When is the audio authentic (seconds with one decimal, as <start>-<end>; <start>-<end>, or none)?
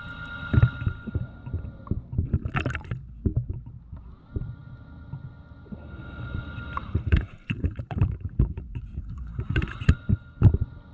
0.0-6.8; 9.9-10.9